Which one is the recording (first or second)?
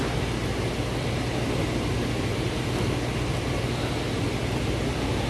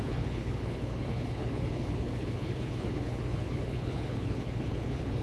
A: first